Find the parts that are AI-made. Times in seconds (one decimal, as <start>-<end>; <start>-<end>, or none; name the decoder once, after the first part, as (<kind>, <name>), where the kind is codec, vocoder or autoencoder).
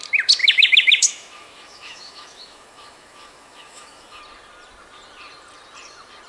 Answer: 0.4-4.2 (autoencoder, DAC-VAE)